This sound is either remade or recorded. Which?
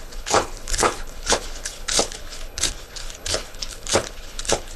remade